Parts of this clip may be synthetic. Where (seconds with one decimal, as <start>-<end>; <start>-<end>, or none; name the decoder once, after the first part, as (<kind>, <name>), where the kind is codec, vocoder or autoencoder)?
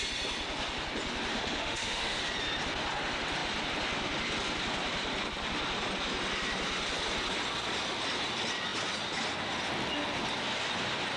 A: 1.3-2.2 (autoencoder, DAC-VAE)